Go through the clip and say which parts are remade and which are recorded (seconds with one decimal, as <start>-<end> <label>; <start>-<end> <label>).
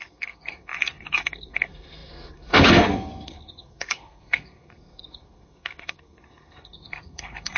0.0-7.6 remade